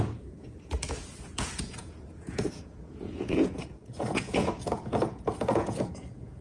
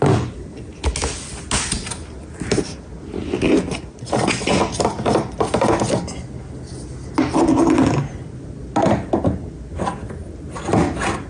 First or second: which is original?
second